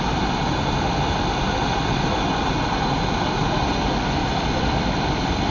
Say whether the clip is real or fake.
real